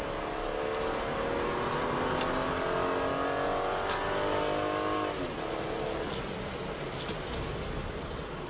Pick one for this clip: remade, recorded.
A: recorded